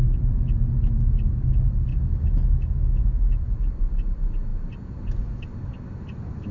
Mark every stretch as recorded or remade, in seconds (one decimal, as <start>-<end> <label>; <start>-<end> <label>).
0.0-1.9 recorded; 1.9-3.4 remade; 3.4-6.5 recorded